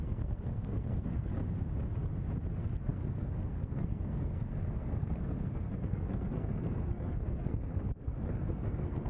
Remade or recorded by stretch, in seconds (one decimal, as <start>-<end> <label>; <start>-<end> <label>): 0.0-1.4 remade; 1.4-2.5 recorded; 2.5-9.1 remade